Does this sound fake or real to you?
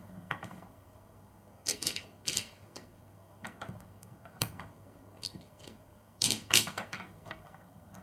fake